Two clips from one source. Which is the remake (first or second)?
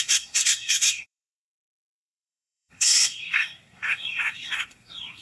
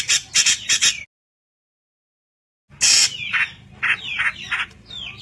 first